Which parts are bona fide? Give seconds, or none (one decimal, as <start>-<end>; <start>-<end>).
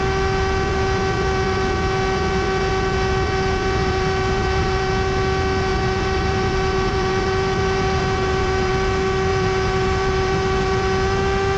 0.0-3.8; 4.9-5.7; 8.7-9.3; 10.8-11.6